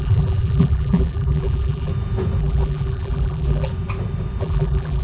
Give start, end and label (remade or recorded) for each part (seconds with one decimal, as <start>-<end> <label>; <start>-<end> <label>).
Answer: 0.0-1.9 remade; 1.9-2.4 recorded; 2.4-3.7 remade; 3.7-4.4 recorded; 4.4-5.0 remade